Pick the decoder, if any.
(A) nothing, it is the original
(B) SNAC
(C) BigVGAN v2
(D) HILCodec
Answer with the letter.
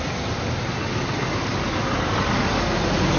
A